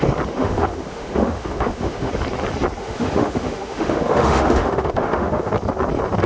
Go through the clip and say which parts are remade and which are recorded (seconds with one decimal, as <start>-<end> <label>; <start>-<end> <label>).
0.0-0.4 recorded; 0.4-2.1 remade; 2.1-2.8 recorded; 2.8-5.5 remade; 5.5-6.3 recorded